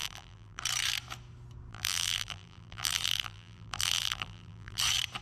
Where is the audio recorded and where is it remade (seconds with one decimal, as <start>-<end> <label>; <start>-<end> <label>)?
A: 0.0-0.6 remade; 0.6-1.7 recorded; 1.7-4.8 remade; 4.8-5.2 recorded